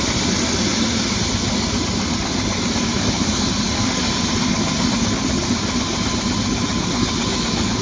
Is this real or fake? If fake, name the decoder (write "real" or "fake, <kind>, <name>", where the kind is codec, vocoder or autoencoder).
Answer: real